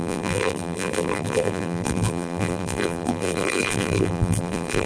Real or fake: fake